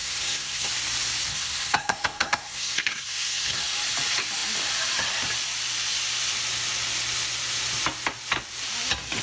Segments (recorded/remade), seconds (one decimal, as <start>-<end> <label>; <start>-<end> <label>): 0.0-0.7 remade; 0.7-1.3 recorded; 1.3-3.6 remade; 3.6-9.2 recorded